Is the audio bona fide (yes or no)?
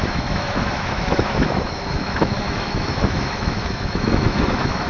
no